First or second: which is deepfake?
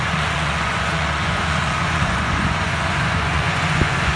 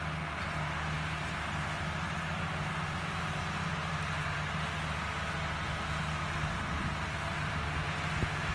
first